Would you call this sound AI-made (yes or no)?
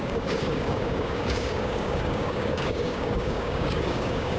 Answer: yes